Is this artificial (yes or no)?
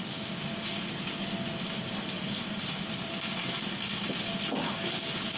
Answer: no